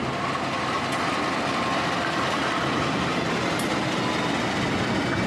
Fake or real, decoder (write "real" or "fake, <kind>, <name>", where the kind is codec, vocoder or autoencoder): real